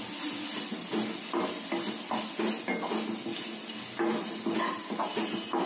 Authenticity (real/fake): real